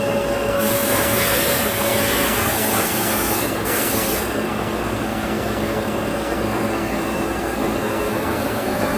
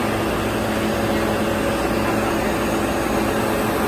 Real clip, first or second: second